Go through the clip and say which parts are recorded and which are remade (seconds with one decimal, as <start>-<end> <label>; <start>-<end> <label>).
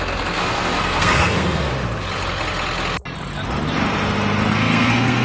0.0-1.7 remade; 1.7-4.5 recorded; 4.5-5.2 remade